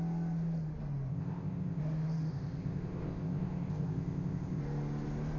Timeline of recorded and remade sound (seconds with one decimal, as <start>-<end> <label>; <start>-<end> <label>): 0.0-1.1 recorded; 1.1-1.8 remade; 1.8-2.3 recorded; 2.3-4.6 remade; 4.6-5.4 recorded